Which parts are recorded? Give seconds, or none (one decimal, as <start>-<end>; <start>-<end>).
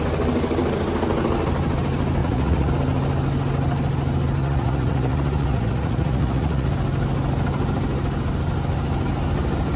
0.0-2.2; 2.7-4.4; 6.7-9.8